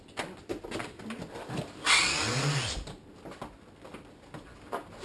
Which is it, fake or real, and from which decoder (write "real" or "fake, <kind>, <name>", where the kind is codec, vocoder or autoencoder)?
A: real